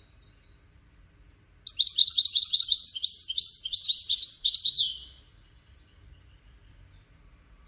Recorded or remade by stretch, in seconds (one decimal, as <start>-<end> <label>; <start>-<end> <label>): 0.0-2.0 recorded; 2.0-4.8 remade; 4.8-7.7 recorded